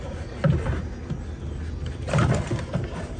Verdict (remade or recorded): recorded